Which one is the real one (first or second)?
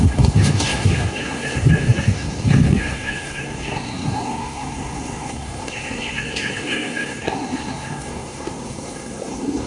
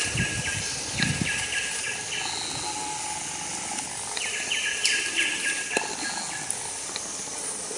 second